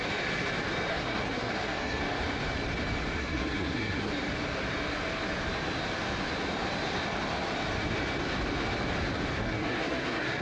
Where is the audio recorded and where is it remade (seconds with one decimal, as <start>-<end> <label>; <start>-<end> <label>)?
0.0-0.9 recorded; 0.9-2.0 remade; 2.0-3.2 recorded; 3.2-4.1 remade; 4.1-9.4 recorded; 9.4-10.4 remade